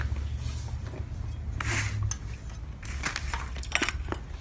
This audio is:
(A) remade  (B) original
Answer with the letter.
B